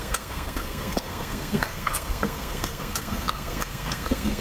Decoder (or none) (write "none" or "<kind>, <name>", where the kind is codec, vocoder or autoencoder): codec, SNAC